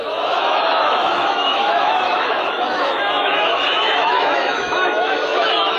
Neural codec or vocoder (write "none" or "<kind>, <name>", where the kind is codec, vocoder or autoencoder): autoencoder, DAC-VAE